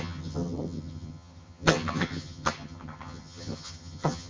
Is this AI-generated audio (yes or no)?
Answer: yes